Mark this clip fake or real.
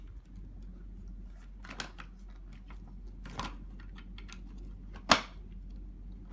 real